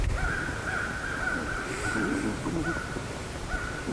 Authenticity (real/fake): real